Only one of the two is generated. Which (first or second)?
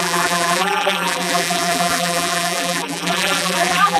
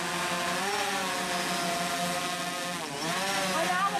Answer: first